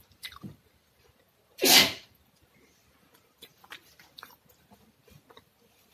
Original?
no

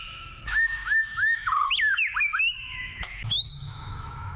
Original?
no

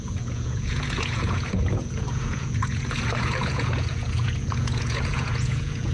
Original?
no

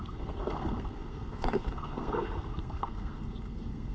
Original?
no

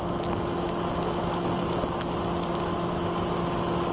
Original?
yes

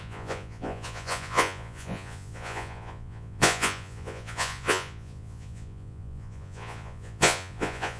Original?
no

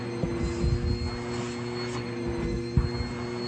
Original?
yes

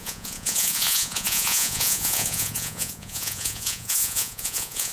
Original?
no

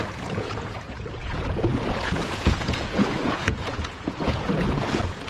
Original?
no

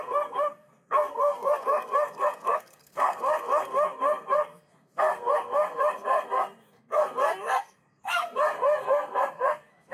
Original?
no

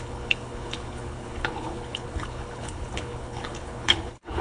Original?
no